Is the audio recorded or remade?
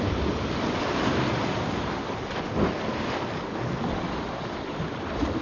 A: recorded